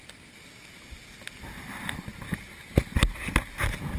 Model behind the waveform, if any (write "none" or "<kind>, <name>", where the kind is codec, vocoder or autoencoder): none